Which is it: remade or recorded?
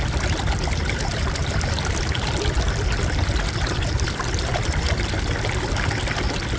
recorded